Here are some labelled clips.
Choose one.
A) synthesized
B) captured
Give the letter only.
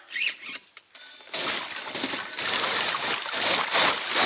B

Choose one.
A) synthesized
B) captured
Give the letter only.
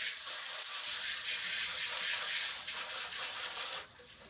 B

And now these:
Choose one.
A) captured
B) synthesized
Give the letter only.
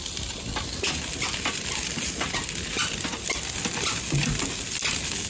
A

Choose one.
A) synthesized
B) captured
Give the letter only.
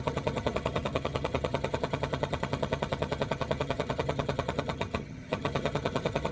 A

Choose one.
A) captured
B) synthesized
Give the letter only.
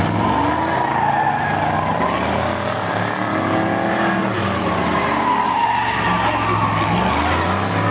A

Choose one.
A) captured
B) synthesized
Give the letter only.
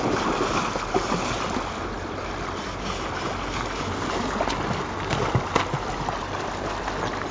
A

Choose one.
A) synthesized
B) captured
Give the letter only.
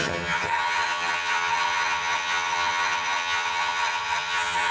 A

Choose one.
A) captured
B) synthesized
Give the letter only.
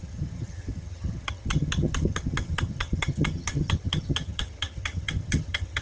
B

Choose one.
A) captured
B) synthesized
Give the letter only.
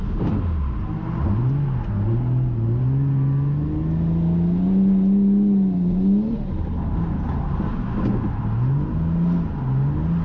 A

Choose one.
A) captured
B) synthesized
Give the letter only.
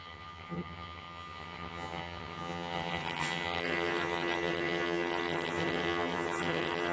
B